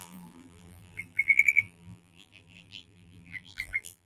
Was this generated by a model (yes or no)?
yes